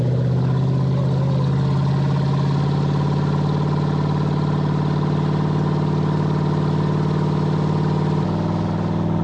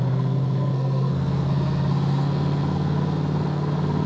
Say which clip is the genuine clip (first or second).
first